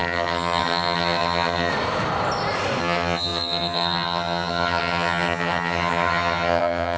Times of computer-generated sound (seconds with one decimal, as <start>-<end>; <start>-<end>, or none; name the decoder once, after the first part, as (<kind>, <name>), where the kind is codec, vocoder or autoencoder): 0.0-1.7 (vocoder, HiFi-GAN); 2.8-7.0

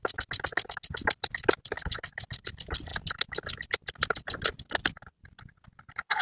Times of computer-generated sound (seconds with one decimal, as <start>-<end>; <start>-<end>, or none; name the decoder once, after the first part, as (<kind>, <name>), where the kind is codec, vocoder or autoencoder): 1.9-2.9 (vocoder, BigVGAN v2); 3.7-6.2

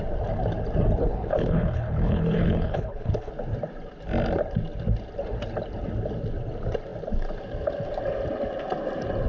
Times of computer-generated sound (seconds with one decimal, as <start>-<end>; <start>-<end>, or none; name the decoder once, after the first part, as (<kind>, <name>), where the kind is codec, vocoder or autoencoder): 1.0-3.3 (codec, HILCodec)

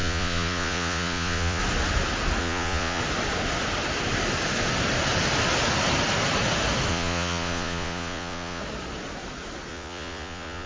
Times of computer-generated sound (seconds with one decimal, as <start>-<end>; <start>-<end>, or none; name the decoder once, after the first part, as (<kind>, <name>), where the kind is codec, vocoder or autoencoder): 0.0-1.6 (vocoder, Vocos); 2.4-3.0; 6.9-8.6; 9.7-10.7

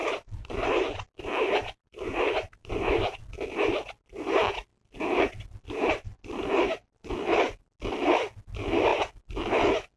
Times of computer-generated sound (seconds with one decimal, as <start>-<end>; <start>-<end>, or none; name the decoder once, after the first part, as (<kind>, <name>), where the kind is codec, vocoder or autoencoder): 0.0-2.9 (vocoder, BigVGAN v2)

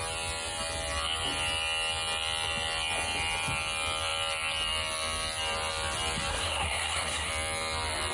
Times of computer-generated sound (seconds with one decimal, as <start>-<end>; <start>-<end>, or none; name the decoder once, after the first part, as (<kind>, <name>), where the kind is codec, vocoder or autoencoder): 6.3-7.3 (codec, SNAC)

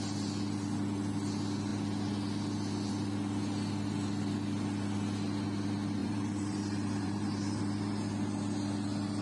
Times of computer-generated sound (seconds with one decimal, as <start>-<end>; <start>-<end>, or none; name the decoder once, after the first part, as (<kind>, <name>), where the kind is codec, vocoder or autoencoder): 6.0-7.6 (vocoder, BigVGAN v2)

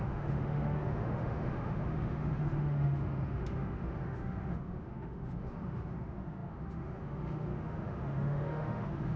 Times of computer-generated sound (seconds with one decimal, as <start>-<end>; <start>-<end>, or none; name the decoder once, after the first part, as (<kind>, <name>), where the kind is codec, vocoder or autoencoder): 0.0-9.2 (autoencoder, DAC-VAE)